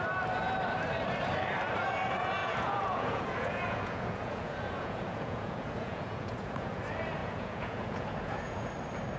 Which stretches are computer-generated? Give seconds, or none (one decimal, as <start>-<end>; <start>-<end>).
2.4-6.8; 7.2-8.7